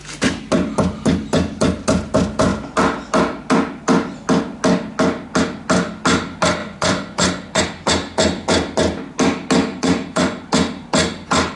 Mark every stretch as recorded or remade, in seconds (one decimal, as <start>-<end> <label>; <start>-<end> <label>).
0.0-6.6 recorded; 6.6-7.6 remade; 7.6-9.7 recorded; 9.7-10.5 remade; 10.5-11.6 recorded